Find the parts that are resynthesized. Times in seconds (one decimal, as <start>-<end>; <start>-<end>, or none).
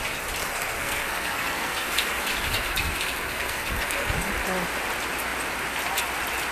0.4-4.3